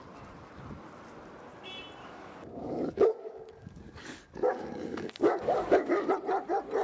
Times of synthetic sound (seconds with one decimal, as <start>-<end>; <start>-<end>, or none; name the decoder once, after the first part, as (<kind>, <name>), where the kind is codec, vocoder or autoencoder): 2.0-6.1 (codec, DAC)

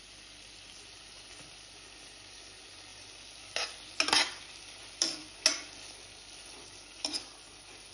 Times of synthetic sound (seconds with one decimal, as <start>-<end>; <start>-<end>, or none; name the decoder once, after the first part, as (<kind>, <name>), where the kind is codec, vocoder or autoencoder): none